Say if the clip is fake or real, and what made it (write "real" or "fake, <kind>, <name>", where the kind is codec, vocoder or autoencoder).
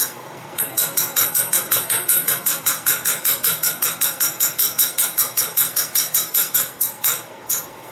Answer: fake, codec, SNAC